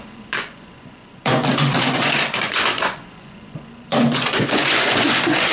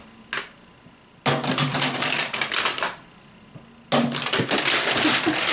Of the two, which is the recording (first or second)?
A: second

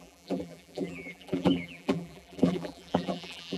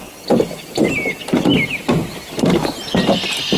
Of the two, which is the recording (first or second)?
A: second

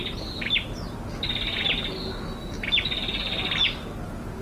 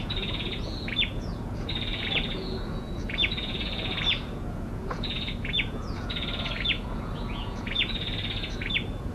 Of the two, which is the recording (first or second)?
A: first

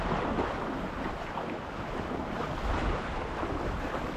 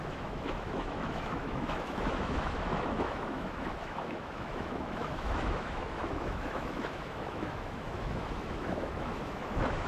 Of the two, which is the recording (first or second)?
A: first